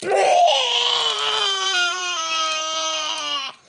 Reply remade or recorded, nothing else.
remade